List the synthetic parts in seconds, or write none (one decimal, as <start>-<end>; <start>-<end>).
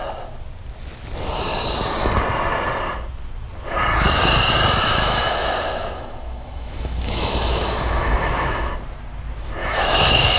4.9-8.7; 9.6-10.4